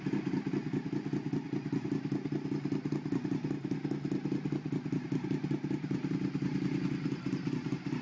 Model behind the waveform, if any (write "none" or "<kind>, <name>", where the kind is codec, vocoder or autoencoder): none